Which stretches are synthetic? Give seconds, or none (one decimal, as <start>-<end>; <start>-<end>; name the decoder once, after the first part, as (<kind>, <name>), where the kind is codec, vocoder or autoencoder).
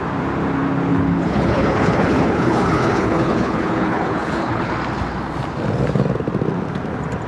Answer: 0.9-4.7 (codec, HILCodec)